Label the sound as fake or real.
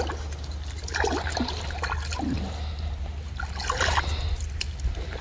real